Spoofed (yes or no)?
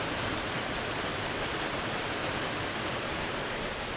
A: no